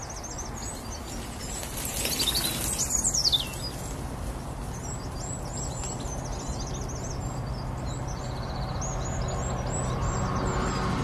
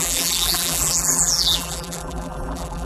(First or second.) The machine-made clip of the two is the second